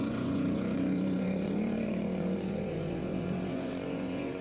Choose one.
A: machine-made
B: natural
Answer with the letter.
A